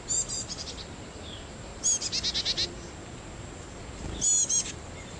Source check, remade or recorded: recorded